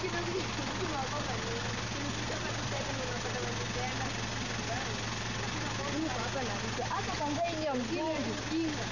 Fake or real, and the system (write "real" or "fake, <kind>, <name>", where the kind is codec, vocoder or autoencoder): real